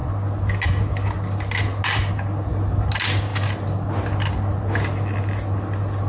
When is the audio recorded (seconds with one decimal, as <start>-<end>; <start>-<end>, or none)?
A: 0.0-6.1